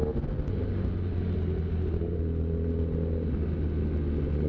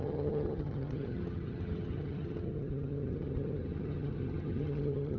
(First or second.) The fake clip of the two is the second